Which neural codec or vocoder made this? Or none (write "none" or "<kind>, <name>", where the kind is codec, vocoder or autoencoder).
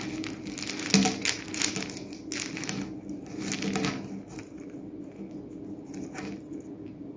none